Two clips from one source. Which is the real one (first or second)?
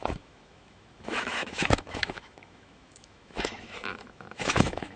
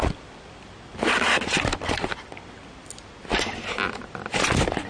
second